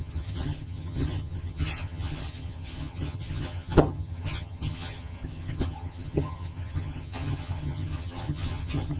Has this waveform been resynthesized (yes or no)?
yes